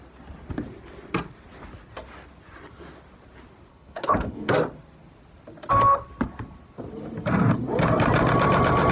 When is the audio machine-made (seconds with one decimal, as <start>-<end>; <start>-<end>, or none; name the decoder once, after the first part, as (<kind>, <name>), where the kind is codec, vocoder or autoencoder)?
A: 3.7-4.5 (codec, HILCodec)

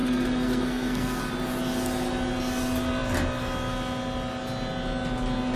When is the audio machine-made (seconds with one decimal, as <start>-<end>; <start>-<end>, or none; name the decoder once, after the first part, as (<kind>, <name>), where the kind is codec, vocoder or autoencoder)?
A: 0.0-1.2 (codec, SNAC)

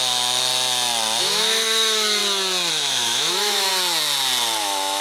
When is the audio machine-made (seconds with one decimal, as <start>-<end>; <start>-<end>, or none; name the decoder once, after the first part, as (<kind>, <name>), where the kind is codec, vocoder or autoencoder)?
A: 0.0-0.5 (autoencoder, DAC-VAE); 1.2-2.2; 2.7-3.7; 4.6-5.0

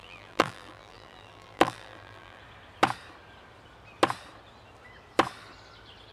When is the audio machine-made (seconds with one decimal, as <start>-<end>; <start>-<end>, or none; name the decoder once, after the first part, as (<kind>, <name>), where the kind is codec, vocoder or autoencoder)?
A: 0.0-2.4 (vocoder, BigVGAN v2)

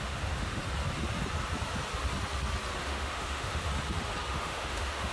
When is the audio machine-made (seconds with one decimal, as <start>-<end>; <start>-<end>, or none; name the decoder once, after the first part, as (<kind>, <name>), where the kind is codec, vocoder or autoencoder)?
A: 0.0-0.6 (autoencoder, DAC-VAE); 2.8-3.7; 4.3-5.1

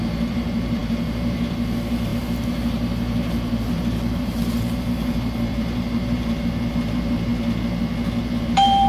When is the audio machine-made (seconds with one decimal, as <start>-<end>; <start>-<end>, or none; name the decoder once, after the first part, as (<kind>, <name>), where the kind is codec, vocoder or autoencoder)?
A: 0.0-7.3 (vocoder, BigVGAN v2); 8.2-8.9

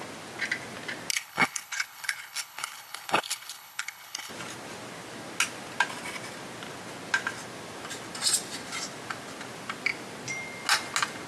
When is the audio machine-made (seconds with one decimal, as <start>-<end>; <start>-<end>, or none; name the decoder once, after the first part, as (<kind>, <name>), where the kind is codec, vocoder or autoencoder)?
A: 1.1-4.3 (codec, HILCodec)